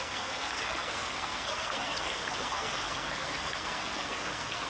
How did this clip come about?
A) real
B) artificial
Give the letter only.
B